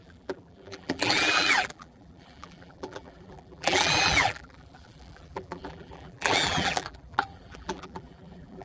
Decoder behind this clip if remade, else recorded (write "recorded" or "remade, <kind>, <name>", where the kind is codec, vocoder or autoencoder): remade, vocoder, BigVGAN v2